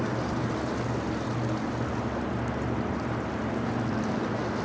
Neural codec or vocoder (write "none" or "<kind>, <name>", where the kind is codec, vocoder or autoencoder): none